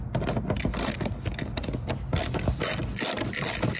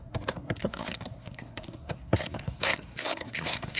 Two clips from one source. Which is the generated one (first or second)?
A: second